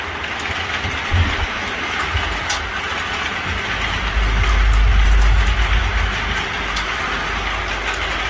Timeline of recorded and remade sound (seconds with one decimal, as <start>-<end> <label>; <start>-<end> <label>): 0.0-8.3 recorded